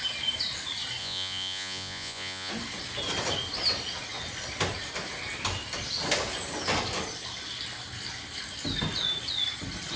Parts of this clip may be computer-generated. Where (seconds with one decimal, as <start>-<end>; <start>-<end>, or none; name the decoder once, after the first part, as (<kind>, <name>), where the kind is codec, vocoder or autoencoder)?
1.0-2.5 (vocoder, Vocos)